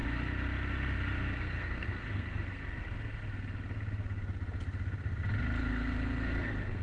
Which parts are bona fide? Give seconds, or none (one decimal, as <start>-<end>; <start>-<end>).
0.0-1.4; 2.6-5.7